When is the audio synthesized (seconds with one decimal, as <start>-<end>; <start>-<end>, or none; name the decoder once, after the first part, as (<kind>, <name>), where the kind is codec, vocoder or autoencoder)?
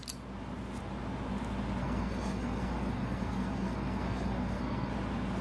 1.8-4.9 (codec, SNAC)